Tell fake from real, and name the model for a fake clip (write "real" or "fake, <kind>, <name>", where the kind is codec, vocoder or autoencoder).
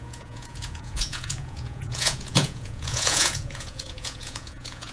fake, vocoder, Vocos